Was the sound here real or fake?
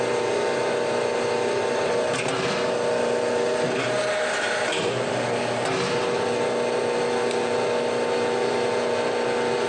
real